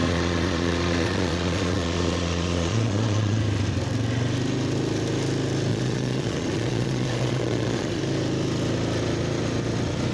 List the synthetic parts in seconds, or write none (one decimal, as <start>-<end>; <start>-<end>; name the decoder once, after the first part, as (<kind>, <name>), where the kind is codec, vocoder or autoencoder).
0.0-3.4 (vocoder, Vocos); 5.7-8.0

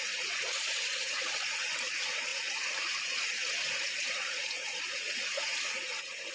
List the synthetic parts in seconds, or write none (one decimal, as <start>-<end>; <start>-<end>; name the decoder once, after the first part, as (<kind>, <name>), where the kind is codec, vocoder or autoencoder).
0.0-6.3 (vocoder, Vocos)

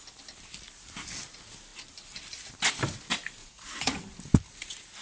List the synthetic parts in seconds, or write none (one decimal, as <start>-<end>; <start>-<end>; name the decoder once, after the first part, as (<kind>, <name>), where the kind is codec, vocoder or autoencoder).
3.4-4.0 (vocoder, Vocos)

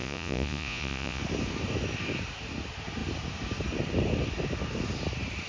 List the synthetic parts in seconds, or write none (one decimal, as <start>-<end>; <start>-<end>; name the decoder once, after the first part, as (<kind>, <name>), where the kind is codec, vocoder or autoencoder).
0.0-1.2 (vocoder, Vocos)

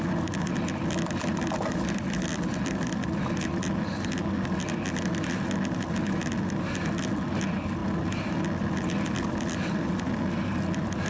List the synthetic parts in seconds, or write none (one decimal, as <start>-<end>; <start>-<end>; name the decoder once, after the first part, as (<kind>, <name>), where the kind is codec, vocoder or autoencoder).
none